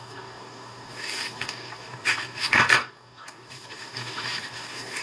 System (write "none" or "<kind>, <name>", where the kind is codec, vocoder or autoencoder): codec, DAC